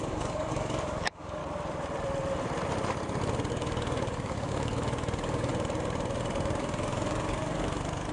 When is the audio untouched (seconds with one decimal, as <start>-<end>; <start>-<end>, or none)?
1.4-3.5; 5.5-6.6